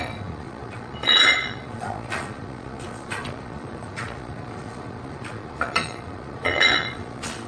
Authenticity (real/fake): fake